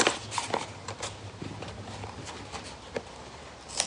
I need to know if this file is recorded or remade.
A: recorded